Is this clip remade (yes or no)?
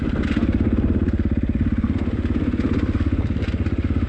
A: no